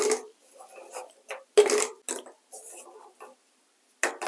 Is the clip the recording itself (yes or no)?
yes